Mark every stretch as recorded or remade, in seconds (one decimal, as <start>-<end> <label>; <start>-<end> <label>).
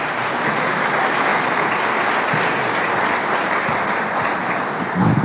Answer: 0.0-5.2 recorded